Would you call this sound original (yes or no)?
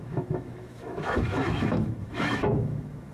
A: no